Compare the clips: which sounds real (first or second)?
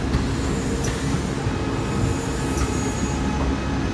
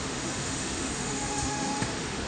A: first